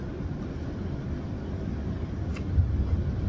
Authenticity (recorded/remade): recorded